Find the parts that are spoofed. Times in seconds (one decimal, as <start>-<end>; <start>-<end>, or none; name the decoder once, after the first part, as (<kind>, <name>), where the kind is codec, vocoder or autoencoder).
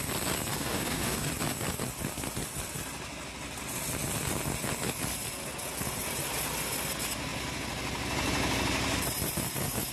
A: 0.5-1.3 (codec, DAC)